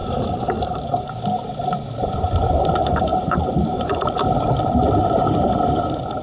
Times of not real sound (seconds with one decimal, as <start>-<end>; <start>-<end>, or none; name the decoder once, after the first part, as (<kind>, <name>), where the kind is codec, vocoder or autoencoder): 0.0-2.6 (vocoder, BigVGAN v2); 3.1-4.1